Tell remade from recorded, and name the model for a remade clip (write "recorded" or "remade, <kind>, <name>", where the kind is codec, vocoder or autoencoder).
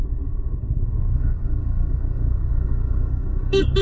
remade, codec, SNAC